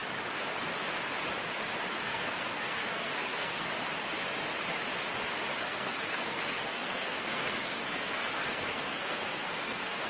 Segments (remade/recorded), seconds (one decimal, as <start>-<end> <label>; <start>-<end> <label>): 0.0-1.9 recorded; 1.9-3.7 remade; 3.7-5.6 recorded; 5.6-10.1 remade